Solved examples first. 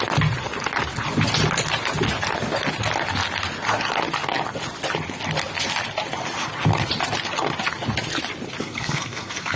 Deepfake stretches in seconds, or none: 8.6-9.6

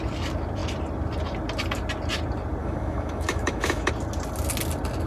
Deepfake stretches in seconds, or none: 2.6-3.9

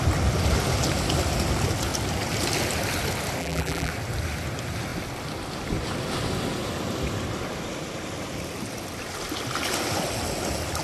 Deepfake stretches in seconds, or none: 3.4-3.9

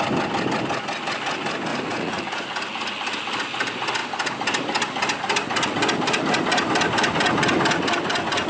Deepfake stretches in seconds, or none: 1.7-2.2

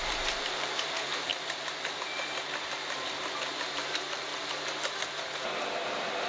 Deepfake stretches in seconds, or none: 0.0-4.3; 5.7-6.3